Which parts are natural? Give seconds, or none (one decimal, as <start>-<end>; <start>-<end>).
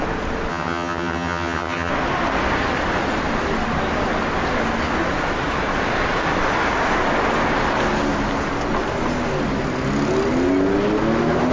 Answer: 0.0-0.5; 1.9-11.5